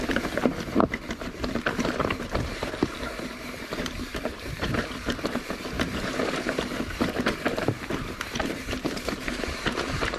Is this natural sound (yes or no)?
no